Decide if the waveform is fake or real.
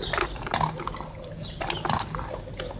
real